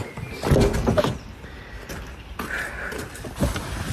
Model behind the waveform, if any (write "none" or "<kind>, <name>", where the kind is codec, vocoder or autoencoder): none